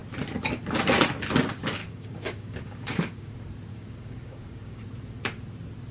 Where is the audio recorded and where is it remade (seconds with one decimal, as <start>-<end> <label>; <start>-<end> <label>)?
0.0-1.8 recorded; 1.8-3.3 remade; 3.3-3.7 recorded; 3.7-4.8 remade; 4.8-5.9 recorded